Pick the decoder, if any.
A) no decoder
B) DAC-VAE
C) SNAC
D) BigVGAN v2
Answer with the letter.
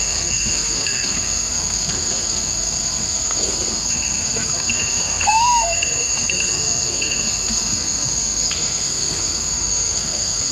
C